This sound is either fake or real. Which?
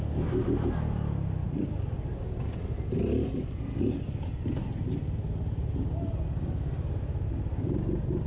real